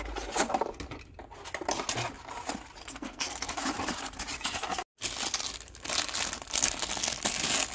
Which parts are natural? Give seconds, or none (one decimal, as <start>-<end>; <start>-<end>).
0.0-2.8; 3.5-7.7